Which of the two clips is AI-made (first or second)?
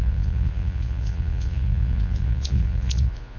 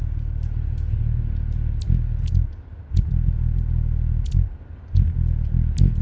first